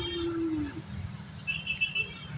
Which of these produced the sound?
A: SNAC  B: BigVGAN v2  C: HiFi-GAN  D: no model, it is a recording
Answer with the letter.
B